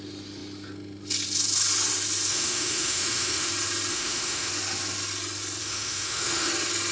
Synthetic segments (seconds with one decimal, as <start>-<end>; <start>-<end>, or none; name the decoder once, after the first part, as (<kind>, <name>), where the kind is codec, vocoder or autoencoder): 2.3-3.5 (autoencoder, DAC-VAE); 3.9-4.5; 5.6-6.5

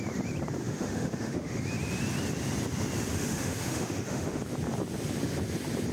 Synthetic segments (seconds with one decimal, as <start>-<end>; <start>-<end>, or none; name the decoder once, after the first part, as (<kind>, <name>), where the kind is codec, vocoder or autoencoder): 0.6-1.6 (autoencoder, DAC-VAE); 3.1-4.4

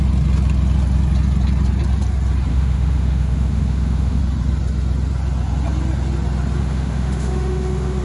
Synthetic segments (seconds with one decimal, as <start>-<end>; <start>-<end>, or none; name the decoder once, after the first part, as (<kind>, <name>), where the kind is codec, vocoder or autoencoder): 2.5-4.2 (autoencoder, DAC-VAE); 6.6-8.0

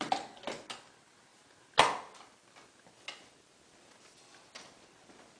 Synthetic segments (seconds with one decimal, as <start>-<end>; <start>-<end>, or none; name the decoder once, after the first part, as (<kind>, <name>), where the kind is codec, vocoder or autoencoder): none

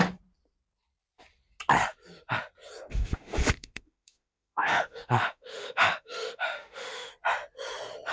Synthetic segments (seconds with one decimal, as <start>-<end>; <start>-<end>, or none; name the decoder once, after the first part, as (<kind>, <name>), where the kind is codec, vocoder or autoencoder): 2.9-7.1 (autoencoder, DAC-VAE)